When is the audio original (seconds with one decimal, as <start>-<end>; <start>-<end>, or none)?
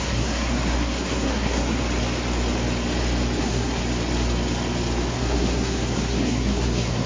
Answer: 1.8-3.4; 3.8-5.1